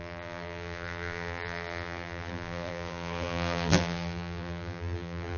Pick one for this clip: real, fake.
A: fake